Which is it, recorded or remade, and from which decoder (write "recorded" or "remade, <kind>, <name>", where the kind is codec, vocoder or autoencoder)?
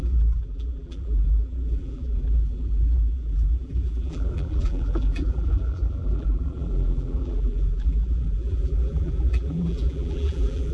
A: remade, vocoder, BigVGAN v2